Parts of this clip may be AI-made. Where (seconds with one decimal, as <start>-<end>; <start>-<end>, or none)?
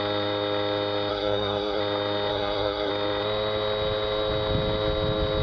1.1-1.8; 2.3-2.9